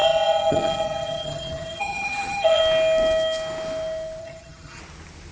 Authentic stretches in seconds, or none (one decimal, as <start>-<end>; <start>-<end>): 2.6-4.2; 4.8-5.3

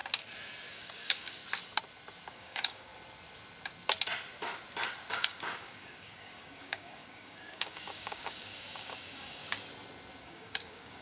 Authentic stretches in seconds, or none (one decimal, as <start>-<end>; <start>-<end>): 0.0-0.7; 1.4-2.3; 2.9-5.1; 9.4-10.2

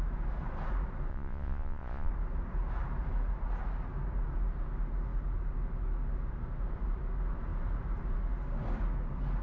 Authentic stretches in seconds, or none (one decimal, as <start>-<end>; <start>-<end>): 0.0-1.1; 2.1-9.4

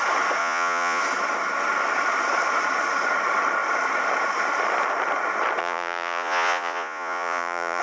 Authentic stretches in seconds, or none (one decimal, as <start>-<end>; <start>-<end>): 0.0-0.4; 1.0-5.6

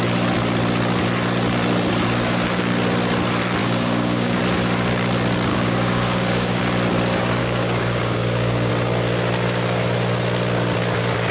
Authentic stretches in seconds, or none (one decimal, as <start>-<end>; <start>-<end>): 0.0-3.6; 4.4-5.5; 6.6-7.4; 8.7-11.3

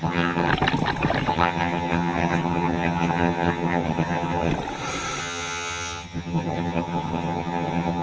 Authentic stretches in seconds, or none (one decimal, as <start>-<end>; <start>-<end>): 0.5-1.3; 4.5-5.2